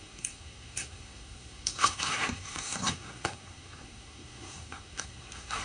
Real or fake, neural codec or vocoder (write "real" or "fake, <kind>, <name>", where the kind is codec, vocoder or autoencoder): fake, codec, SNAC